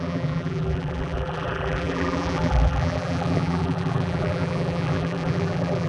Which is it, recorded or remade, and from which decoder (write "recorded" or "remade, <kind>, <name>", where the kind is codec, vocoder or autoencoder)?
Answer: remade, vocoder, BigVGAN v2